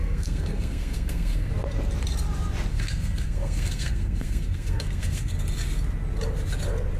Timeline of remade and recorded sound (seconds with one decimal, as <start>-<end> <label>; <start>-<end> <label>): 0.0-1.5 remade; 1.5-2.7 recorded; 2.7-5.3 remade; 5.3-7.0 recorded

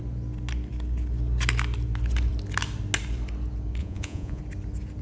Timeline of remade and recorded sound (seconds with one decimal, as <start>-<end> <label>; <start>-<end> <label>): 0.0-3.8 recorded; 3.8-4.4 remade; 4.4-5.0 recorded